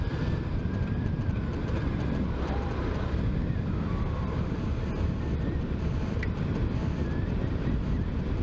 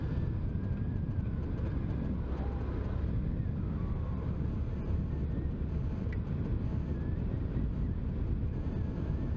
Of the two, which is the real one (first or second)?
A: second